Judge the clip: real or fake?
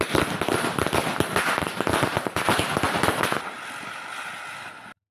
real